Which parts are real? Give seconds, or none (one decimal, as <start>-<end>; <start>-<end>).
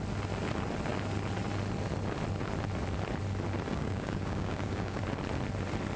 0.0-3.7; 5.0-6.0